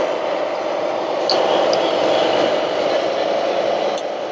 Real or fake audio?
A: real